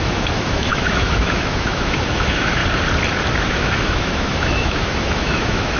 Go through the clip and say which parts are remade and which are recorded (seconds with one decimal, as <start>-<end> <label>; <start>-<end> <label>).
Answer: 0.0-2.6 remade; 2.6-3.4 recorded; 3.4-5.8 remade